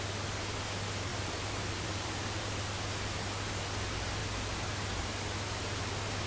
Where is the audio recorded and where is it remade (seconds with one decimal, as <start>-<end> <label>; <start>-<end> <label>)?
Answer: 0.0-1.1 recorded; 1.1-2.5 remade; 2.5-6.3 recorded